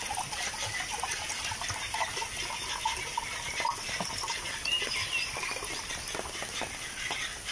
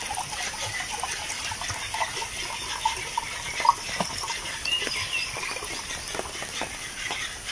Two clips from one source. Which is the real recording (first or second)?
first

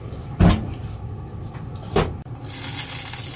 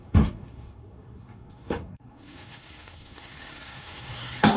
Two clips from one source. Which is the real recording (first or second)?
first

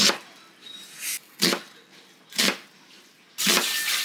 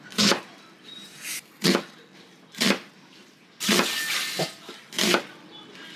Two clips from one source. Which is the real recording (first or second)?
first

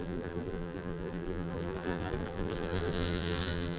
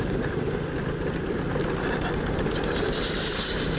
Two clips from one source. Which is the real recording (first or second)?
second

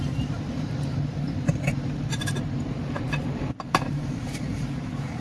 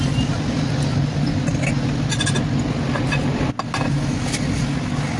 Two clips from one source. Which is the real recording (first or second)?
second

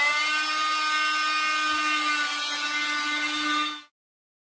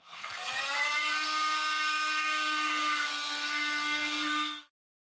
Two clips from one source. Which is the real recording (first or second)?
first